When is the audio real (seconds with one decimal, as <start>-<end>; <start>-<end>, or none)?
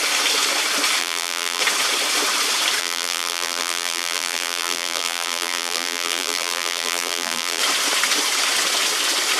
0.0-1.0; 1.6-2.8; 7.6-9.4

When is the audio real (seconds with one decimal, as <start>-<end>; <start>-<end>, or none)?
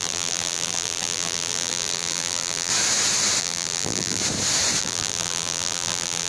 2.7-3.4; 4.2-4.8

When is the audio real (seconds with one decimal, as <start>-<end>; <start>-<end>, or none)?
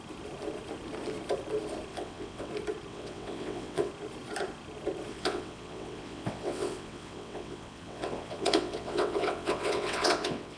0.0-1.9; 2.5-2.9; 3.9-5.1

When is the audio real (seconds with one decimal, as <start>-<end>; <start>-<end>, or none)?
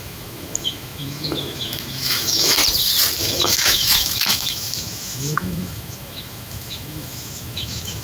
2.6-3.2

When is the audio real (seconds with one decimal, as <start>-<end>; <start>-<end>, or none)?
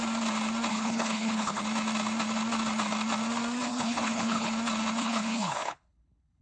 0.0-0.7; 1.6-3.7; 4.5-5.0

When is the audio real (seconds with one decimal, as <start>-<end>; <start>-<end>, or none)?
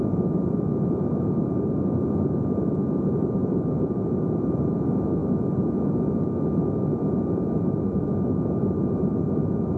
0.0-9.8